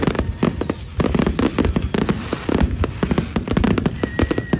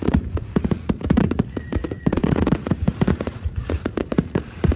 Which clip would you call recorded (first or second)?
first